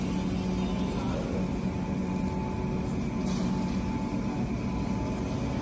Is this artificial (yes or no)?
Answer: no